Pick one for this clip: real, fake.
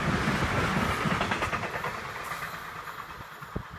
real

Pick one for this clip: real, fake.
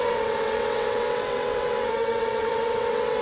fake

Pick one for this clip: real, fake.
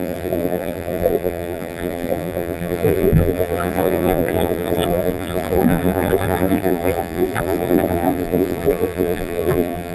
fake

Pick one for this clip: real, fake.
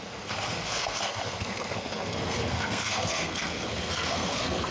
fake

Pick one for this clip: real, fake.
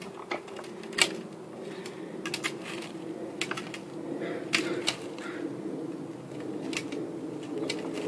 real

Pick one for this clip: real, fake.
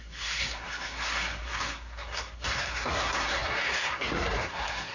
fake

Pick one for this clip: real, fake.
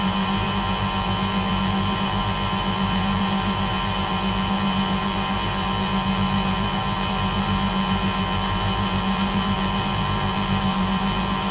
fake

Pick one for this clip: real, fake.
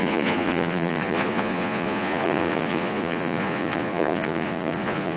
fake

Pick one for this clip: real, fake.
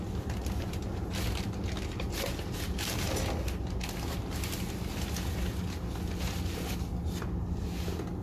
real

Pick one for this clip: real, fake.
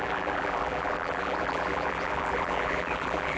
fake